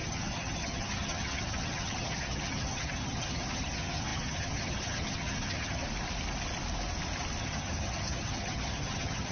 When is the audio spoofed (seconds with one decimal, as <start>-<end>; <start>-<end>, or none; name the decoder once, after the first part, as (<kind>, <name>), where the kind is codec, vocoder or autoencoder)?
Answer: 0.0-5.8 (vocoder, HiFi-GAN); 7.4-9.3